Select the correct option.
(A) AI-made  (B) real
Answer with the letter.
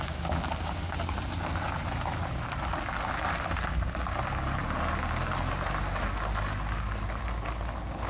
B